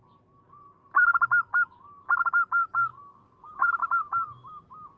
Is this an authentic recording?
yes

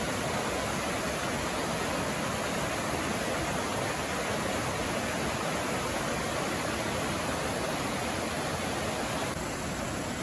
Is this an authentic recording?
yes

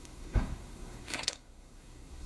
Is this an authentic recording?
no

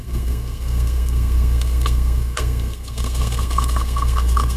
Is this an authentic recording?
no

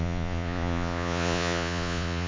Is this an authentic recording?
no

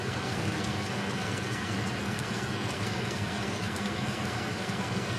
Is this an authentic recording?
no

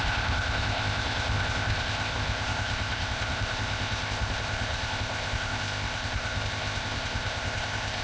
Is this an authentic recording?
no